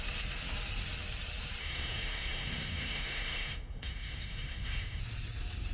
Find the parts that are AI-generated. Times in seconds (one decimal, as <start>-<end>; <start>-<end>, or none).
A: 1.6-5.0